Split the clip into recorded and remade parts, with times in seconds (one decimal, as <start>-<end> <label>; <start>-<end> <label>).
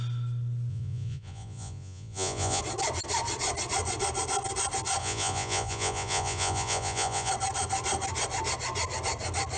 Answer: 0.0-0.7 recorded; 0.7-2.6 remade; 2.6-5.0 recorded; 5.0-7.3 remade; 7.3-9.6 recorded